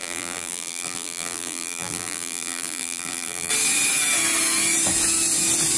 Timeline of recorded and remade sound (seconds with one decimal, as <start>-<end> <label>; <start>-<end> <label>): 0.0-3.5 remade; 3.5-5.8 recorded